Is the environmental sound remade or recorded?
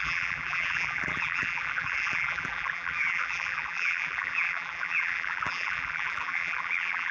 remade